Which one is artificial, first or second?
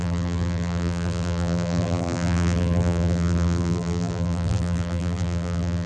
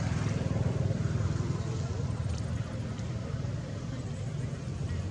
first